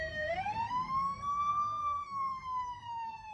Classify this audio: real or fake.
fake